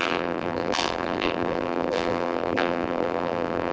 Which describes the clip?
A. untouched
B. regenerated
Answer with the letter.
B